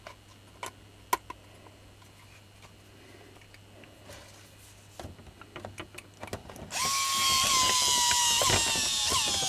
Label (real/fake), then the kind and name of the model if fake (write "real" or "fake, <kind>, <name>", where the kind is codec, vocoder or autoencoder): real